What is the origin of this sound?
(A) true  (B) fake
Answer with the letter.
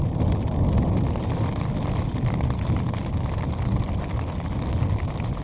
A